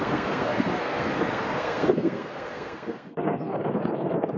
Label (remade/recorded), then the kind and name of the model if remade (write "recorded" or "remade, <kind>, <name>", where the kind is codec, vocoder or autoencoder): remade, codec, SNAC